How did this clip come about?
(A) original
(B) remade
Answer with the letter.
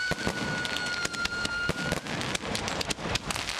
A